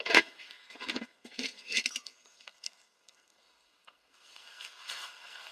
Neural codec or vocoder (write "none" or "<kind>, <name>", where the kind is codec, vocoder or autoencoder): codec, SNAC